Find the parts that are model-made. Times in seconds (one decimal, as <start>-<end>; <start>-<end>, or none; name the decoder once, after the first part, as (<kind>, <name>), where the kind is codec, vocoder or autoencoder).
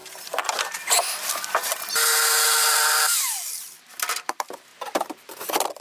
none